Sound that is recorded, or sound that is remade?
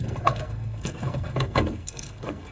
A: remade